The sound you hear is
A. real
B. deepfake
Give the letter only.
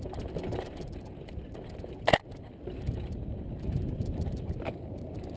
A